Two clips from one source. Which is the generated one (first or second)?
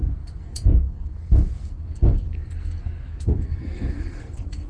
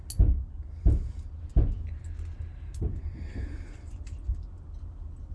first